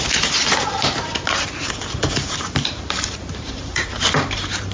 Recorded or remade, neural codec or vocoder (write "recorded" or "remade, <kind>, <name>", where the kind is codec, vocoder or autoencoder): remade, vocoder, BigVGAN v2